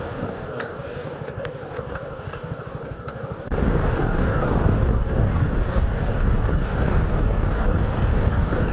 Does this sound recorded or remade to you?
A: remade